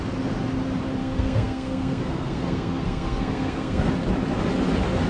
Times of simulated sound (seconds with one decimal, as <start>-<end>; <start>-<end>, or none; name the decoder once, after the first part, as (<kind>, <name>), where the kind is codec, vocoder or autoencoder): 1.0-3.9 (codec, SNAC)